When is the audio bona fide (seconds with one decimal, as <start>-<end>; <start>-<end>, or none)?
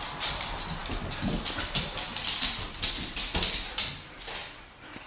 0.0-5.1